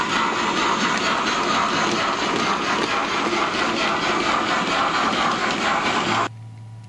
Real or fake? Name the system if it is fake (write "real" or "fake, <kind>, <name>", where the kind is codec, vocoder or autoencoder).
real